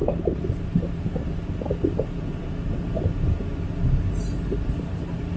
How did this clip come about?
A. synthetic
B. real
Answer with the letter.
B